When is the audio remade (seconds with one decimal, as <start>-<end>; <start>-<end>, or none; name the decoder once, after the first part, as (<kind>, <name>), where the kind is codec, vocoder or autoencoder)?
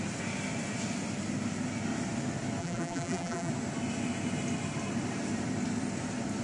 2.6-3.5 (vocoder, BigVGAN v2)